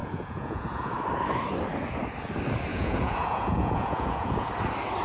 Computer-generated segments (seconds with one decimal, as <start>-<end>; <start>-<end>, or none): 0.0-0.9; 2.7-4.5